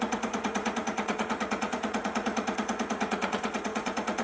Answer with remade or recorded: remade